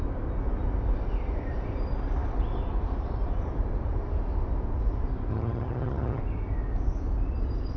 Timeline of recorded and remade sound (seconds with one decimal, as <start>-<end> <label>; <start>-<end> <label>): 0.0-5.3 recorded; 5.3-6.2 remade; 6.2-7.8 recorded